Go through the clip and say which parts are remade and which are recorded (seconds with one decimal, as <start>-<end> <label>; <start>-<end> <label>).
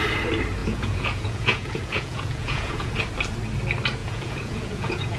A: 0.0-0.6 recorded; 0.6-2.9 remade; 2.9-4.0 recorded; 4.0-5.2 remade